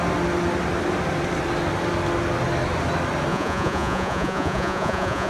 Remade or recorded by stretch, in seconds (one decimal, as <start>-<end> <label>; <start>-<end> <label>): 0.0-3.3 recorded; 3.3-5.3 remade